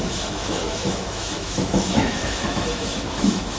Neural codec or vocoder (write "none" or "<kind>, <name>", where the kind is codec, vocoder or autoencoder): autoencoder, DAC-VAE